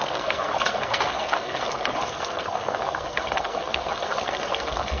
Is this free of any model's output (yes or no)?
no